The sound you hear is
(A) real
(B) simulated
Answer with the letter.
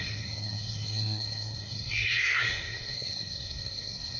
B